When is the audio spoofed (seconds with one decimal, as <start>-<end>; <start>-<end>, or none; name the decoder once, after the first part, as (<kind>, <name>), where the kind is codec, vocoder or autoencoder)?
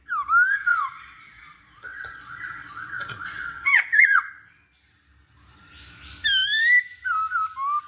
0.5-4.3 (vocoder, Vocos)